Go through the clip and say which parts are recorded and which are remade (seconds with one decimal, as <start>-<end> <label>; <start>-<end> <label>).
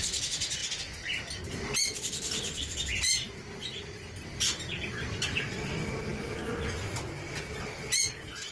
0.0-8.5 recorded